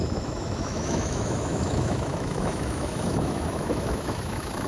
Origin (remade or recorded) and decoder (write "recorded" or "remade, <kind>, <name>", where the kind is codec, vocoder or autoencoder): remade, autoencoder, DAC-VAE